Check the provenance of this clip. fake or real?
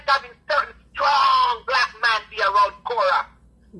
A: fake